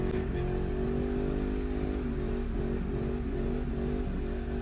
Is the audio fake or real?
real